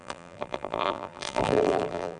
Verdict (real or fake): fake